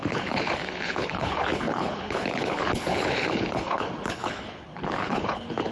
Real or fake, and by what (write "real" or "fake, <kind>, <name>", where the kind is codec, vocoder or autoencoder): fake, codec, HILCodec